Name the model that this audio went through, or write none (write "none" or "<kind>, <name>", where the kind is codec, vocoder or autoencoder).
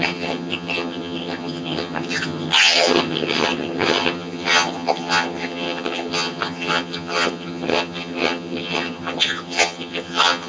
vocoder, HiFi-GAN